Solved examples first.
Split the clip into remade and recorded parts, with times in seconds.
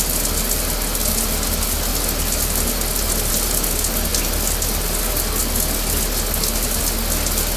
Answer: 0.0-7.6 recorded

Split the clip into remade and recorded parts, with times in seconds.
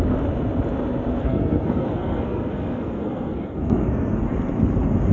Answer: 0.0-1.2 recorded; 1.2-4.2 remade; 4.2-5.1 recorded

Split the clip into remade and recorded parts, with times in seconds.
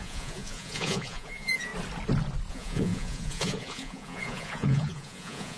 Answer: 0.0-1.7 remade; 1.7-2.5 recorded; 2.5-5.6 remade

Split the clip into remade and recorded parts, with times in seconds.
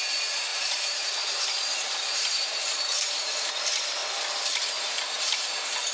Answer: 0.0-0.5 recorded; 0.5-3.5 remade; 3.5-4.0 recorded; 4.0-5.5 remade; 5.5-5.9 recorded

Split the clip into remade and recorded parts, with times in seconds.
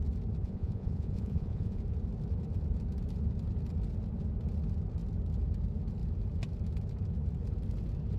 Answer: 0.0-0.4 recorded; 0.4-1.8 remade; 1.8-8.2 recorded